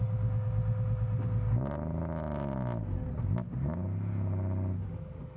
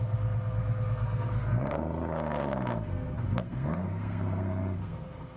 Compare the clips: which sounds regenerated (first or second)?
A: second